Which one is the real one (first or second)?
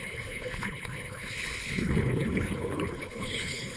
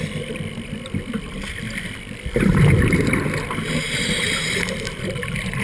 second